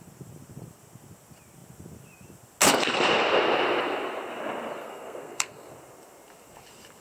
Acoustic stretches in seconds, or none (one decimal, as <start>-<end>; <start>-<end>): 0.0-4.8; 5.7-7.0